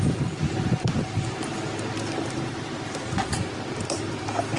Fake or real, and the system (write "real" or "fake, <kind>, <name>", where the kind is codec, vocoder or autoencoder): real